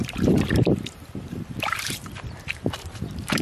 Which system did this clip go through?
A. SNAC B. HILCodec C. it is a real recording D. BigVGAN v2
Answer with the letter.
D